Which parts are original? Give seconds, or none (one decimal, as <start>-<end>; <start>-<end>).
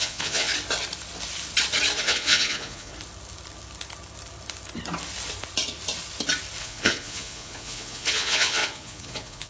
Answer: 0.5-2.0; 2.9-6.6